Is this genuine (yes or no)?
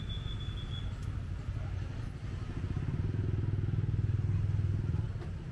yes